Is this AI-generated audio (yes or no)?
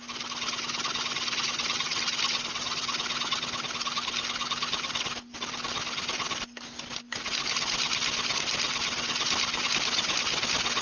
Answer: no